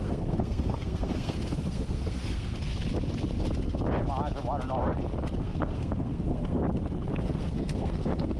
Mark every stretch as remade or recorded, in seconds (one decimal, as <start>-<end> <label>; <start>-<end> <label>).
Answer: 0.0-2.7 remade; 2.7-5.4 recorded; 5.4-6.6 remade; 6.6-7.2 recorded; 7.2-8.4 remade